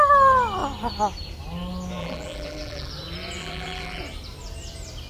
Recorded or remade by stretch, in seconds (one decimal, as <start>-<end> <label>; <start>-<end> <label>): 0.0-2.0 recorded; 2.0-2.9 remade; 2.9-3.4 recorded; 3.4-4.0 remade; 4.0-5.1 recorded